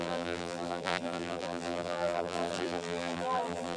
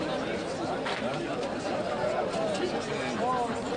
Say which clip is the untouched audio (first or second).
second